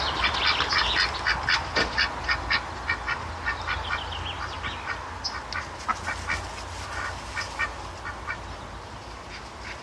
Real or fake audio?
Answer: real